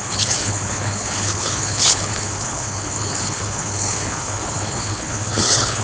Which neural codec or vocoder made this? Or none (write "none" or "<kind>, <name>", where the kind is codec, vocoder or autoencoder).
codec, HILCodec